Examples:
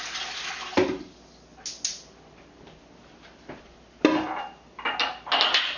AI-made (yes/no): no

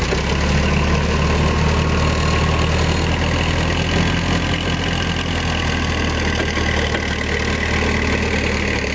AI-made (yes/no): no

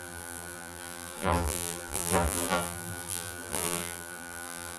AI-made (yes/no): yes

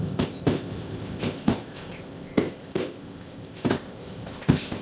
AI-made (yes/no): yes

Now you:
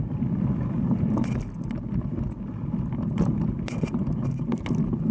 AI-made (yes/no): no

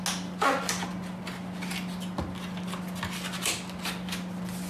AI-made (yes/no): no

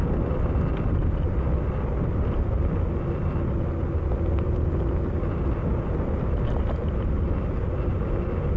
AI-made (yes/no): no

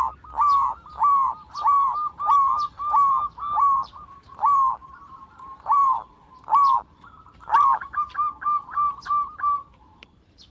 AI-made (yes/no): yes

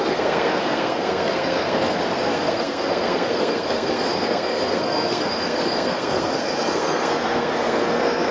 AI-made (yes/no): yes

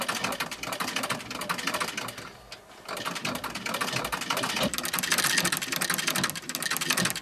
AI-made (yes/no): no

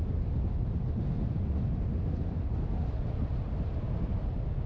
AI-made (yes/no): no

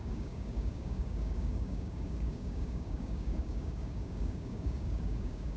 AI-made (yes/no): yes